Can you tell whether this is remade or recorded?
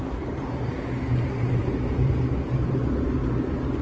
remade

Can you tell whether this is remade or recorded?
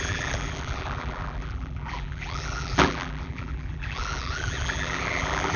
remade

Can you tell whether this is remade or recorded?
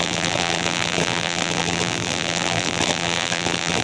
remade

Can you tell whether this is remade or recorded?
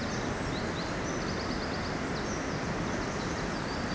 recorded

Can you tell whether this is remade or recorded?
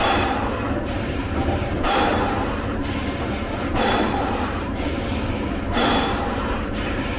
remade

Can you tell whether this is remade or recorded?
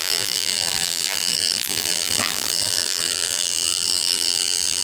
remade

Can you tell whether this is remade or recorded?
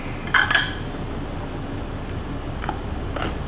recorded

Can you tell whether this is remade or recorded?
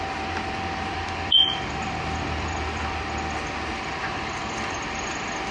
remade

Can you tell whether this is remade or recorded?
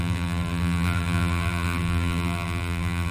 remade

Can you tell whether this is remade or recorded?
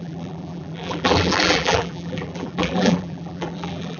remade